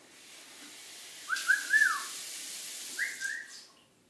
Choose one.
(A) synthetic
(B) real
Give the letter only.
B